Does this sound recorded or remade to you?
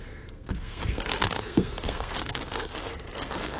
remade